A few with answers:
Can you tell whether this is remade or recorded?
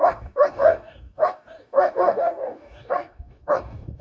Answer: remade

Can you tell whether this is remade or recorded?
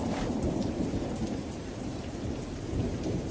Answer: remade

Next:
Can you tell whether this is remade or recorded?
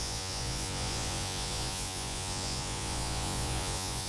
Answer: remade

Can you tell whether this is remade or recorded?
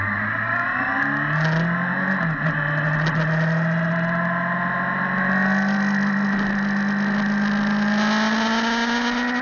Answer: recorded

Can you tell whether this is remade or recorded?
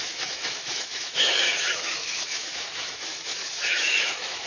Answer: remade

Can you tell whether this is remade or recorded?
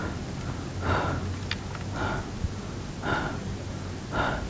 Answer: recorded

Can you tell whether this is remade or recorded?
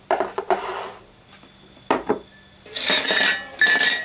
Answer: recorded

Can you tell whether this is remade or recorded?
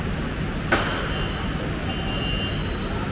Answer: recorded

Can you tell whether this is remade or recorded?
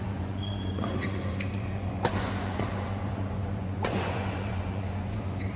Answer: remade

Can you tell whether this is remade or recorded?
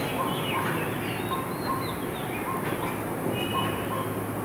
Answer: recorded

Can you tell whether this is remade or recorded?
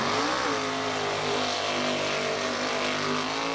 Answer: recorded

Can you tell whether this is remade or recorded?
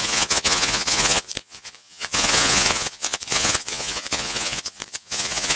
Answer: remade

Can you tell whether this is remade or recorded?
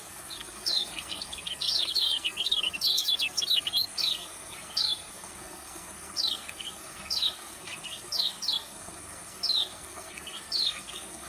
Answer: remade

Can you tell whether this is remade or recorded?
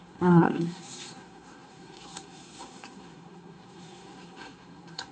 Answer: remade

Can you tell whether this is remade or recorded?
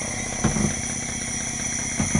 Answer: recorded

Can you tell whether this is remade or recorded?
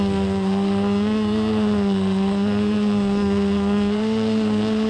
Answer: remade